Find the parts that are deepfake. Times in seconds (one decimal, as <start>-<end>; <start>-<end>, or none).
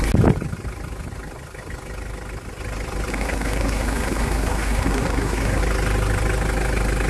3.1-5.6